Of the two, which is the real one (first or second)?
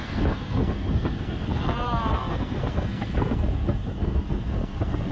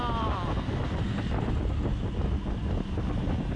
second